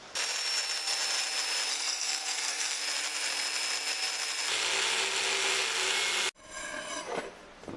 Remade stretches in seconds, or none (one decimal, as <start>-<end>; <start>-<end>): 1.7-2.8